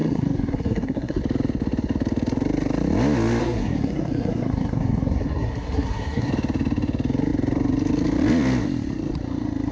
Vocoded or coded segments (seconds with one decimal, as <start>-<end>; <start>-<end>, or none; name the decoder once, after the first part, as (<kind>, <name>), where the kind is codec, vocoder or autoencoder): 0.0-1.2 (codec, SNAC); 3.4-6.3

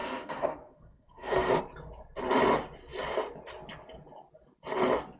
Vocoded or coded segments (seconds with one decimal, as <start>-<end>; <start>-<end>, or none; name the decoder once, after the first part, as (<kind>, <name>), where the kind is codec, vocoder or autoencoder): 0.0-1.6 (codec, SNAC)

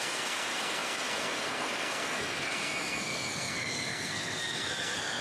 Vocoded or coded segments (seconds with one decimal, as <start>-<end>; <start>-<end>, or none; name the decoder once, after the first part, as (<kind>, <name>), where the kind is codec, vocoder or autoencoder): 0.0-5.2 (codec, SNAC)